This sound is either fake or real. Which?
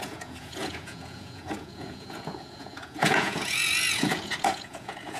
fake